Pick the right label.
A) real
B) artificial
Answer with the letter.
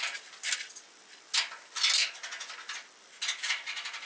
A